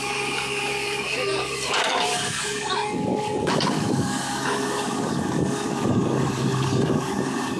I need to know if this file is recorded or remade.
remade